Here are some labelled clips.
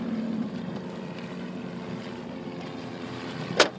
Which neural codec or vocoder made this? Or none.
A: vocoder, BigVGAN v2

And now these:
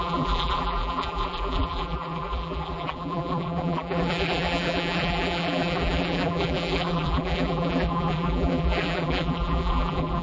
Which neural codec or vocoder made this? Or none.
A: vocoder, BigVGAN v2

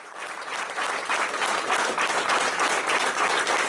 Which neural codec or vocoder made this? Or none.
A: none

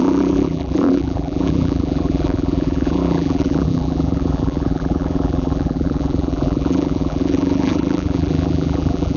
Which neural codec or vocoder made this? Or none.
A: vocoder, BigVGAN v2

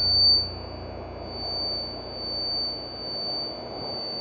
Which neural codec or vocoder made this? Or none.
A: none